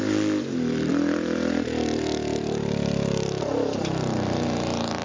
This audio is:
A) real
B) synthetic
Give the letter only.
B